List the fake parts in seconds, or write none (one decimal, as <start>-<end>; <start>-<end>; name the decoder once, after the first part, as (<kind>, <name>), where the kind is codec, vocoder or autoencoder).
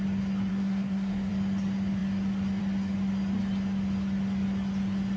0.5-1.3 (codec, SNAC)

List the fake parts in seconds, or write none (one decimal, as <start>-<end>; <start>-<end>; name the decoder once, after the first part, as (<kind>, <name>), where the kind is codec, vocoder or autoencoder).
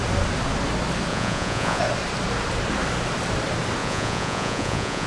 1.1-1.8 (vocoder, Vocos); 3.8-5.1